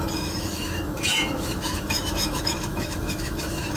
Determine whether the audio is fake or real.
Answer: fake